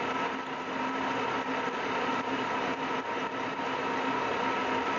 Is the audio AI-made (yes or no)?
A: no